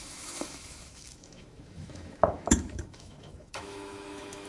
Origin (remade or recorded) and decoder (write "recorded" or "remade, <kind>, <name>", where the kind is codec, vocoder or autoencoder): remade, autoencoder, DAC-VAE